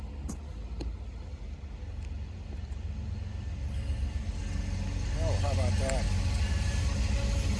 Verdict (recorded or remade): recorded